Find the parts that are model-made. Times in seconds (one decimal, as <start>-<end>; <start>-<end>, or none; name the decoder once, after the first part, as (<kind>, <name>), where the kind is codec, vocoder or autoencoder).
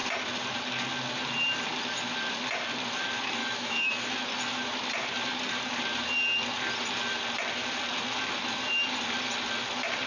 3.4-3.9 (autoencoder, DAC-VAE)